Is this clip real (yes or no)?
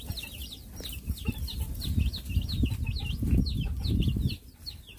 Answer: yes